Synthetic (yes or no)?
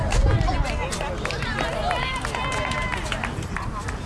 no